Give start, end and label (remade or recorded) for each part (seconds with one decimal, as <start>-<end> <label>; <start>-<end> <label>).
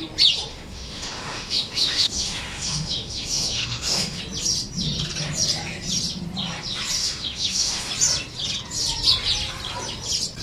0.0-0.5 recorded; 0.5-4.2 remade; 4.2-7.0 recorded; 7.0-7.9 remade; 7.9-10.4 recorded